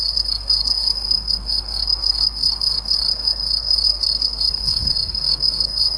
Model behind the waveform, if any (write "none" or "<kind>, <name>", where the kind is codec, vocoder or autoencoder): codec, SNAC